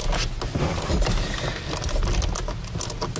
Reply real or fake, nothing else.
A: real